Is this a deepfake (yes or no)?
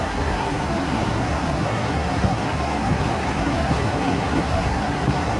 yes